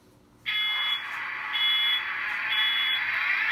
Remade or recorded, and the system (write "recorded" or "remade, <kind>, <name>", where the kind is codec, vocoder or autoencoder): recorded